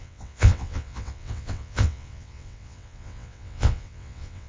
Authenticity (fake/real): fake